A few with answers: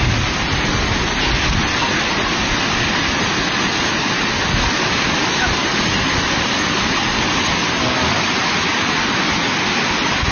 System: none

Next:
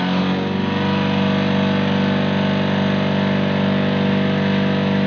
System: none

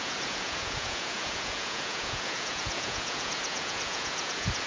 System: vocoder, Vocos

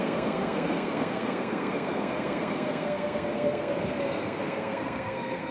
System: codec, SNAC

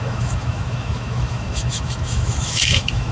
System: autoencoder, DAC-VAE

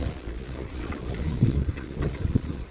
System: vocoder, Vocos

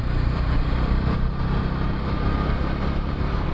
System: vocoder, BigVGAN v2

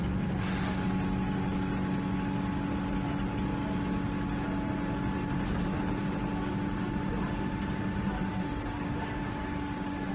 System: none